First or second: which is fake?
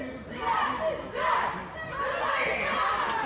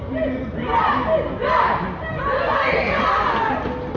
second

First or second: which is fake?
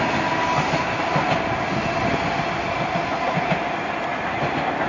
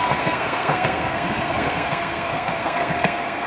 second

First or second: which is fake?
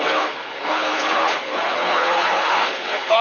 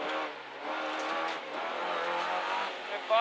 first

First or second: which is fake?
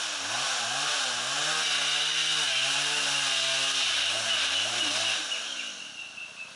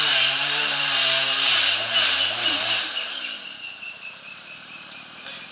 second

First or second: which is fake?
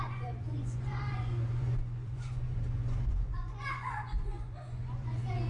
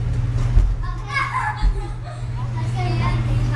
first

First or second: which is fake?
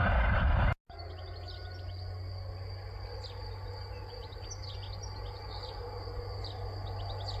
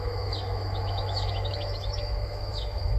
second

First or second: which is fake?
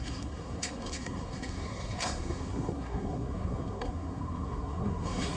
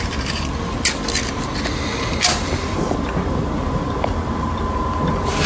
first